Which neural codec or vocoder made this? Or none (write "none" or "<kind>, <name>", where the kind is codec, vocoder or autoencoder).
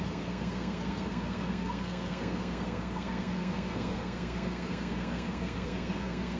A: codec, SNAC